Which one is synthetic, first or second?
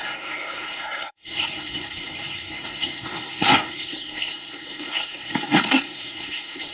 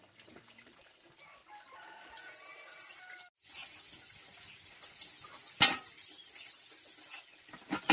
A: first